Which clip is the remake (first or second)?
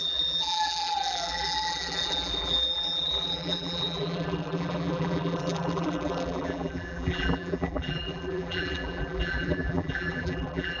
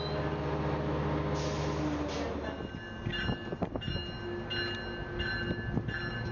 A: first